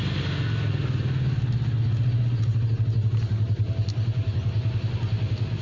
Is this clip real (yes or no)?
yes